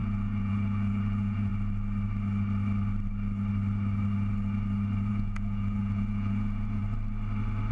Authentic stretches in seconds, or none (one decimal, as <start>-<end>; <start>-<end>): 1.5-5.1; 6.8-7.7